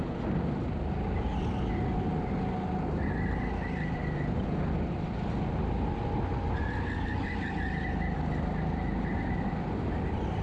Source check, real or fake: real